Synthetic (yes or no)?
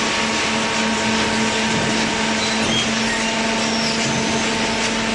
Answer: no